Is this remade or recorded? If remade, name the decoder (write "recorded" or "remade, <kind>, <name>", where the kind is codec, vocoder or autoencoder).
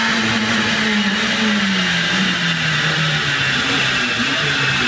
recorded